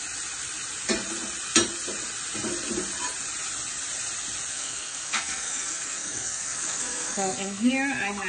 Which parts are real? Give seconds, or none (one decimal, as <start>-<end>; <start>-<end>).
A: 0.0-4.5; 7.7-8.3